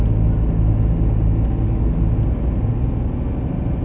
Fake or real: real